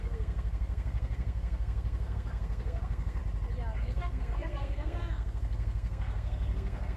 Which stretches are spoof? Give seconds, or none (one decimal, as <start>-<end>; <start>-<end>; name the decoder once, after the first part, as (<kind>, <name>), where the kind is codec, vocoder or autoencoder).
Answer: 0.0-3.2 (codec, SNAC); 3.8-7.0